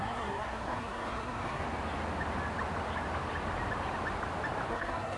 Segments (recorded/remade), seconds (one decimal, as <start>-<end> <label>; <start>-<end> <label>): 0.0-1.6 remade; 1.6-4.7 recorded; 4.7-5.2 remade

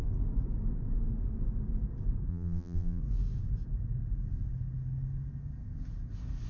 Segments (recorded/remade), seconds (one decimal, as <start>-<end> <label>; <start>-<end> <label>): 0.0-2.3 recorded; 2.3-3.0 remade; 3.0-6.5 recorded